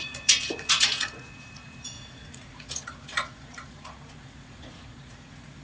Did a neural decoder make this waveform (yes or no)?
yes